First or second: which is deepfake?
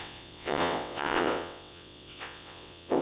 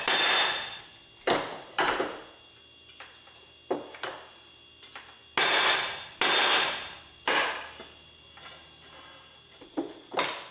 first